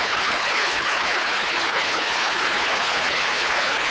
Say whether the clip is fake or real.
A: fake